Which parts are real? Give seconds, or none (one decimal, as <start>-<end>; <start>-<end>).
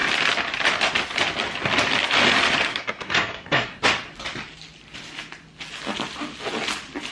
0.0-2.7; 3.8-7.1